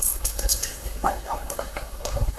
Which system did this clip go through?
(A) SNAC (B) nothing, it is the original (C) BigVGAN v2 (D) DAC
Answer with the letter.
A